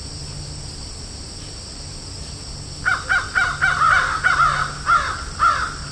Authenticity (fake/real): real